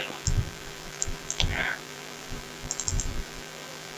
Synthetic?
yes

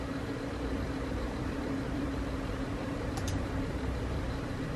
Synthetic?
yes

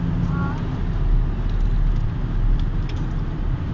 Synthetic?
no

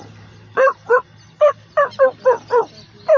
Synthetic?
no